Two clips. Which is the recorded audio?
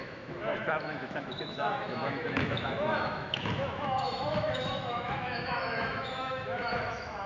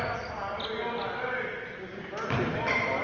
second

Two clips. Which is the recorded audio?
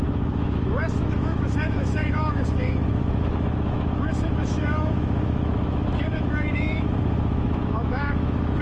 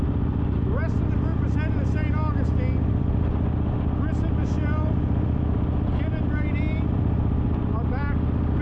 second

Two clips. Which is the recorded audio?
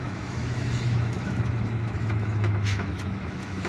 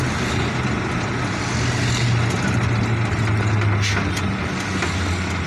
second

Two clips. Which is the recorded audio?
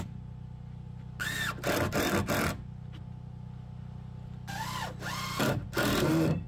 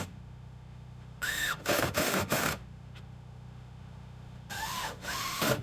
first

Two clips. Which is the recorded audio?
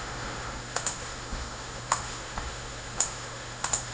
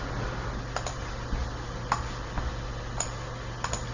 second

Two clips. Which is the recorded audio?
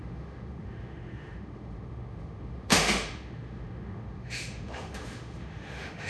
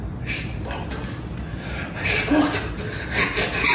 second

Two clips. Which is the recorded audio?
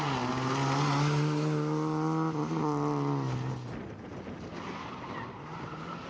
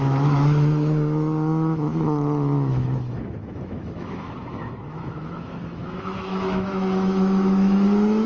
first